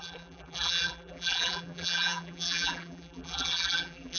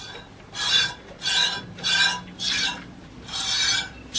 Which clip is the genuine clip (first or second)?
second